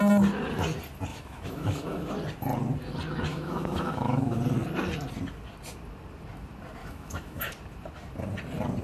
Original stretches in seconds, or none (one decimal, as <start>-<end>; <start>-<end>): 0.0-1.1; 2.1-3.3; 4.4-6.8; 7.5-8.8

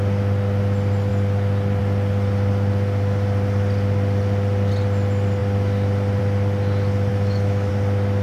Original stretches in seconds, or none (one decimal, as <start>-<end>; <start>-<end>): 0.0-7.1; 7.7-8.2

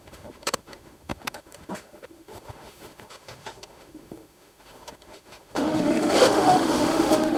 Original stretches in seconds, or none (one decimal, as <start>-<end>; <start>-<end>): none